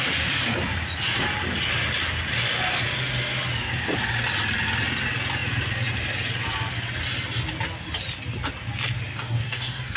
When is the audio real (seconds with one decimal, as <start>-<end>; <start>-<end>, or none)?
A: 0.0-9.1

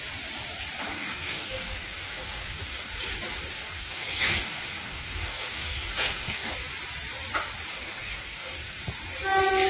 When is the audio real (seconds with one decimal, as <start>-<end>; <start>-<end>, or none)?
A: 0.0-0.9; 2.9-3.5; 6.5-7.7; 8.8-9.7